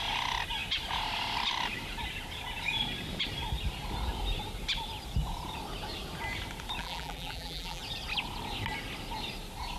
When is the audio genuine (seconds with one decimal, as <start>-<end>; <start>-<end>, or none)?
0.0-6.8; 7.8-9.8